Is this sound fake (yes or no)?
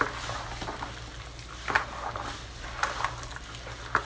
no